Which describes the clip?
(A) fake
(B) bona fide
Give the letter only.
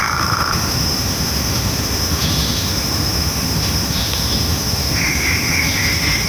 A